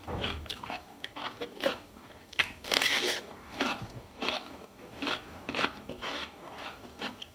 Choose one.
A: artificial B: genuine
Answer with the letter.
A